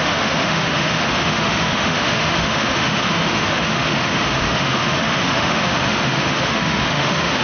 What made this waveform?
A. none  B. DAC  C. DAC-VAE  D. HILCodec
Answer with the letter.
C